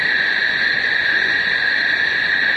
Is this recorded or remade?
remade